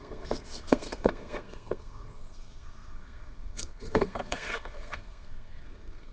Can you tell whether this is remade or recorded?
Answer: remade